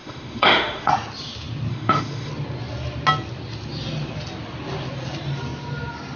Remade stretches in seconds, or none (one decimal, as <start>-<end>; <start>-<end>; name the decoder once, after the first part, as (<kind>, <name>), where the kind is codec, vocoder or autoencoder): 0.0-0.9 (autoencoder, DAC-VAE); 1.7-2.3